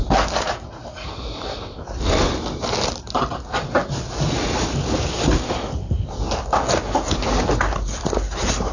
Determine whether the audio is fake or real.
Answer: real